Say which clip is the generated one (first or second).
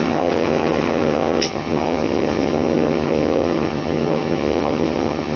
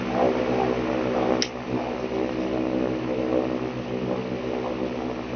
first